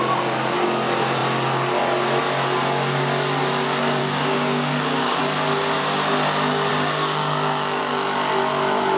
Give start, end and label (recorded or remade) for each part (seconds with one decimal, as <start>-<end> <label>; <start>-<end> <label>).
0.0-4.0 recorded; 4.0-5.2 remade; 5.2-6.7 recorded; 6.7-7.8 remade; 7.8-9.0 recorded